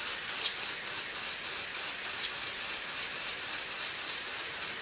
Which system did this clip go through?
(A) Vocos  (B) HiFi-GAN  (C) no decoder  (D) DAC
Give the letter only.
C